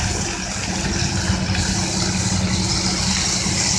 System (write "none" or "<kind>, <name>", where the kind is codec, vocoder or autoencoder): none